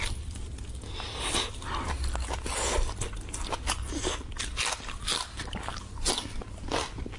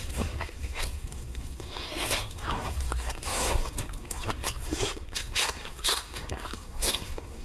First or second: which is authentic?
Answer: first